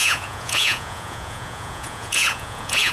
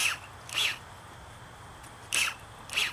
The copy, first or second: first